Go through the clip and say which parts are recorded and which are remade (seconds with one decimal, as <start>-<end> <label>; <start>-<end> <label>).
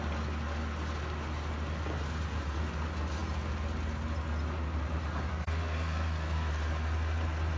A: 0.0-5.3 recorded; 5.3-6.5 remade; 6.5-7.6 recorded